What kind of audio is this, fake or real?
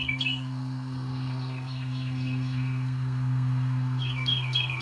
fake